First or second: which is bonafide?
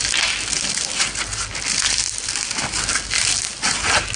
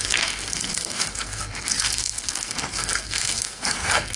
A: first